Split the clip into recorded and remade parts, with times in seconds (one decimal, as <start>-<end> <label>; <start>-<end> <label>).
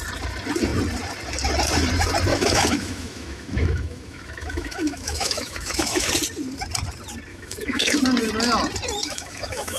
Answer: 0.0-2.3 recorded; 2.3-6.1 remade; 6.1-7.3 recorded; 7.3-8.0 remade; 8.0-9.0 recorded; 9.0-9.8 remade